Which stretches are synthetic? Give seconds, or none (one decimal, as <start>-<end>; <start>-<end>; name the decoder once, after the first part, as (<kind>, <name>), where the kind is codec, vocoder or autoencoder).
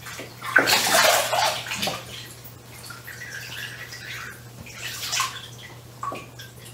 none